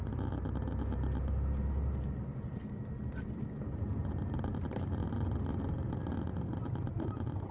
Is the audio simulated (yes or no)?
no